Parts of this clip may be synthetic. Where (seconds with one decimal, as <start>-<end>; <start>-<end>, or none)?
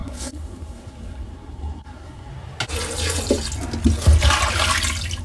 0.0-2.3